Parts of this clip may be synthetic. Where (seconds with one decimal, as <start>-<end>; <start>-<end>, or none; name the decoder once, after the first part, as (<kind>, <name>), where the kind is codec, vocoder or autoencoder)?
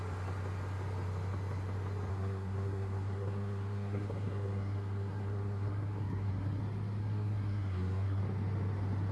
2.1-6.6 (codec, SNAC); 7.0-8.2